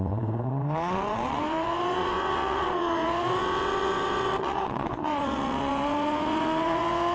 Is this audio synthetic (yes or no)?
yes